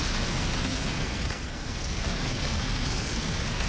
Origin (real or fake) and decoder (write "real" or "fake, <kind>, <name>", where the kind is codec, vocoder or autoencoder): fake, codec, SNAC